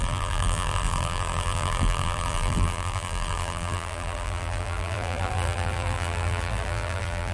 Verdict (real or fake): fake